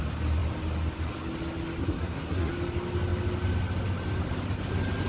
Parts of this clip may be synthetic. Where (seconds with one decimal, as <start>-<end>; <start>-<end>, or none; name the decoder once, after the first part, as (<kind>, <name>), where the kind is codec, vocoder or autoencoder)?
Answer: 1.8-2.5 (codec, SNAC)